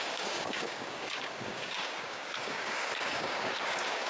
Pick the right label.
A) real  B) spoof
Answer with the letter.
B